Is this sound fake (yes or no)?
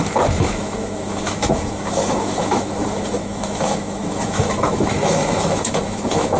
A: yes